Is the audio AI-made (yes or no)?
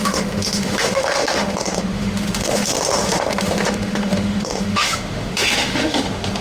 yes